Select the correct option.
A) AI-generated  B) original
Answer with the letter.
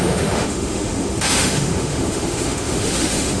A